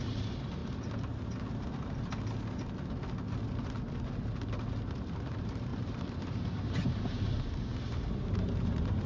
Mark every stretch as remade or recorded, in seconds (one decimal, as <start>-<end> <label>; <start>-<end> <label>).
0.0-0.6 remade; 0.6-5.0 recorded; 5.0-9.1 remade